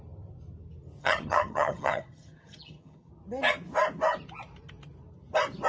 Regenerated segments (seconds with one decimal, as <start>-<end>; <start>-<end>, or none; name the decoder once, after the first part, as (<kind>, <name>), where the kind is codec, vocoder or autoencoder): 1.0-3.1 (vocoder, HiFi-GAN)